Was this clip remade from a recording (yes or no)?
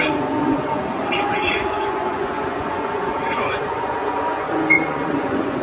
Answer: yes